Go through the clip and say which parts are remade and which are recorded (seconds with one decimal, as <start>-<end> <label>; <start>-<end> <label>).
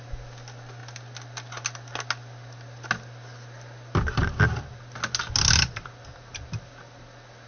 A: 0.0-7.5 recorded